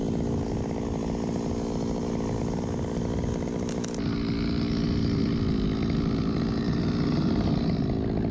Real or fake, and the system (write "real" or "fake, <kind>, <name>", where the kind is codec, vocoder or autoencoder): real